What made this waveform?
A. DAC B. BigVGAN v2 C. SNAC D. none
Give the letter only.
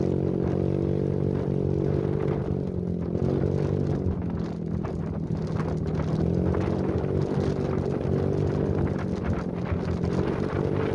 D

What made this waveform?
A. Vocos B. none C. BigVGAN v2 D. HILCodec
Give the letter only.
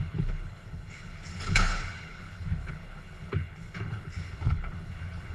D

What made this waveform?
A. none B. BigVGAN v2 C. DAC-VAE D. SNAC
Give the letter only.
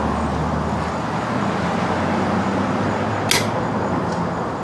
A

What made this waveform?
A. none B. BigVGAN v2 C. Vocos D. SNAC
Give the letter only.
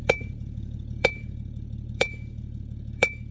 C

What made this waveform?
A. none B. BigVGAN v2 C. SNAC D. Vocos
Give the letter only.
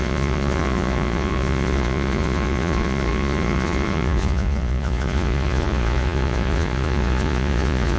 D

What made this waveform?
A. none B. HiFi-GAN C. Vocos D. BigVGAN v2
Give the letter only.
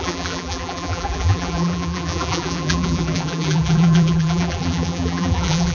D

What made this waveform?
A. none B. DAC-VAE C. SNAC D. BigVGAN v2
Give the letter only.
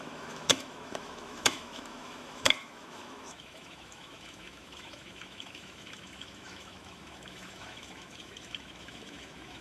B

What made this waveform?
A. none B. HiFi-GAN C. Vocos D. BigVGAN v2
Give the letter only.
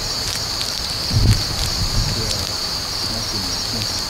D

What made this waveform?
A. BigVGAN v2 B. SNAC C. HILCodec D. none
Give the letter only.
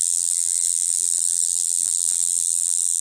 A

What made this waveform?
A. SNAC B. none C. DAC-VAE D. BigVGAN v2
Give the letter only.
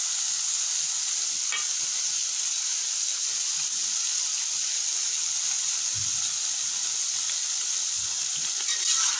B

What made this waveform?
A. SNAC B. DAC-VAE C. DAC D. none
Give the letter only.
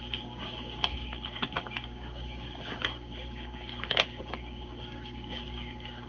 C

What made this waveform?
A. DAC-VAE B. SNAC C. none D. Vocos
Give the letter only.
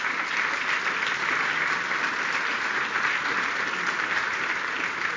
C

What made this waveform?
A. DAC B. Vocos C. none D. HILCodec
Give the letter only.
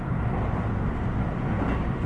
C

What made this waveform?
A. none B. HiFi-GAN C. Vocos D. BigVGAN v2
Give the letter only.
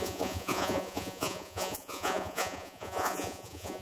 C